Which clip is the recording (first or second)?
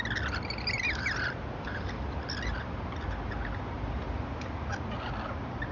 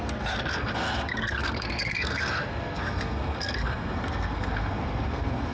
first